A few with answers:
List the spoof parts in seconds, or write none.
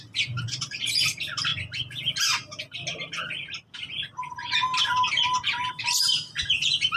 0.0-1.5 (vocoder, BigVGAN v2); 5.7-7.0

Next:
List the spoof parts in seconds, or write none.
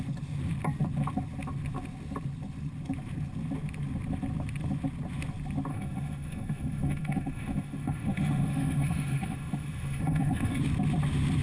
5.7-10.6 (autoencoder, DAC-VAE)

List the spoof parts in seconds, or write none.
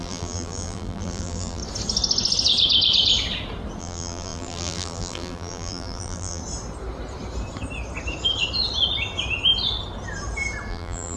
0.0-1.6 (vocoder, BigVGAN v2); 3.8-6.4; 10.7-11.2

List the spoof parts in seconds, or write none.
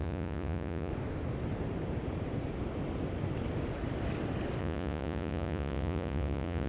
0.0-0.9 (vocoder, Vocos); 4.6-6.7